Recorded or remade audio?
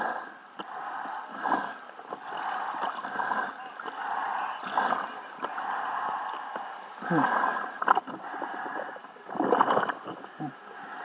recorded